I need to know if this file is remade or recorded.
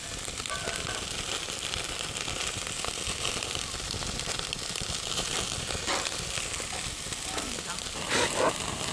remade